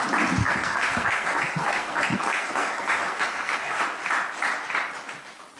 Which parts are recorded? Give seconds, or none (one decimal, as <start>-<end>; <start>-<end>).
0.0-0.4; 3.8-5.6